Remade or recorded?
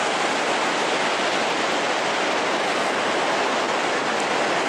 recorded